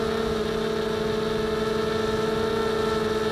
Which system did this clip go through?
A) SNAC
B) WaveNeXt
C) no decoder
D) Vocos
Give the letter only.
C